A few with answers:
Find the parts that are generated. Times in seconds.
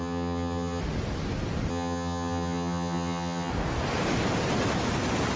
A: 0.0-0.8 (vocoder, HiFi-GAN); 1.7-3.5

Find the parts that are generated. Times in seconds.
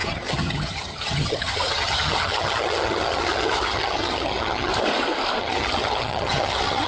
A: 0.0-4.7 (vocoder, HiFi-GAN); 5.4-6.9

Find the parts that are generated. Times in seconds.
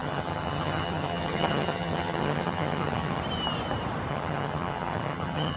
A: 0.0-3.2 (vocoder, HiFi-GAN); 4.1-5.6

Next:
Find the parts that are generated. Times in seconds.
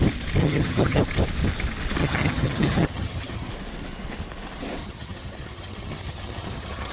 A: 0.4-1.0 (vocoder, HiFi-GAN); 2.0-3.5; 4.8-6.9